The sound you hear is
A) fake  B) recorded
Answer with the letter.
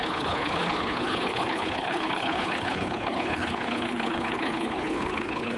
A